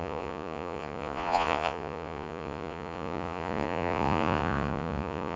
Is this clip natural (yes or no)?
no